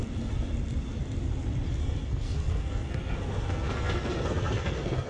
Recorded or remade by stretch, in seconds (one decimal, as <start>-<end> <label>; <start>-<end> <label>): 0.0-1.8 recorded; 1.8-5.1 remade